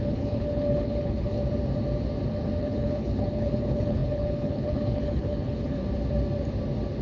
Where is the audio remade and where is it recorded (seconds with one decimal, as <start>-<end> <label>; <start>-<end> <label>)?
0.0-1.4 remade; 1.4-2.6 recorded; 2.6-5.8 remade; 5.8-7.0 recorded